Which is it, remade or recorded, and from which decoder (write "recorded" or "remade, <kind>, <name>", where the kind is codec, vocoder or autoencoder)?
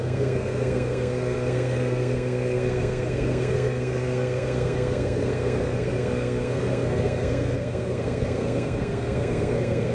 remade, codec, SNAC